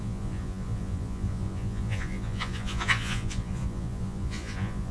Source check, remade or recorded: remade